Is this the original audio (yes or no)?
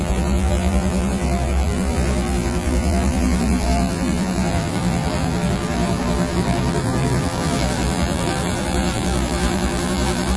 no